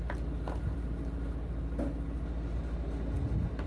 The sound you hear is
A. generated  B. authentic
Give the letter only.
B